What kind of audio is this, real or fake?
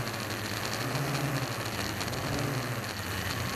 real